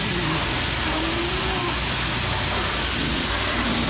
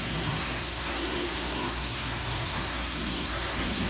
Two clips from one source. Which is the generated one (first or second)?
second